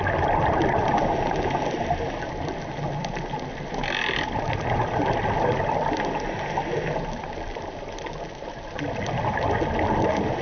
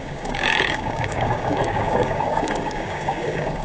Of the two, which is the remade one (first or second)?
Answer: second